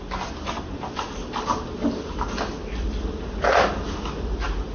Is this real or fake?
real